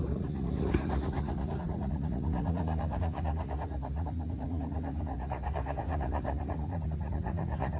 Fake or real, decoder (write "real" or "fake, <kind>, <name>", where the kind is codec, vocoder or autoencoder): fake, vocoder, Vocos